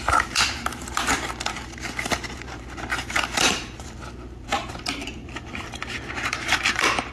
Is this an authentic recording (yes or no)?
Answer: no